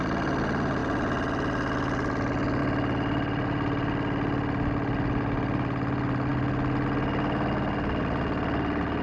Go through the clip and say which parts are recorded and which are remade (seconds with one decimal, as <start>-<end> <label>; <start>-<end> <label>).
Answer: 0.0-9.0 recorded